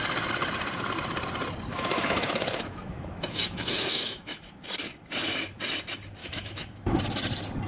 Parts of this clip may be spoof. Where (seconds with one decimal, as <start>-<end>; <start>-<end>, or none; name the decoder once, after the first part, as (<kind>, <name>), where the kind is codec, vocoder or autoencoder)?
1.7-4.6 (autoencoder, DAC-VAE); 6.2-7.0